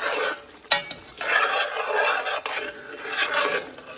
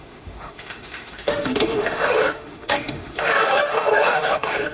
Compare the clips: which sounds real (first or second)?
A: first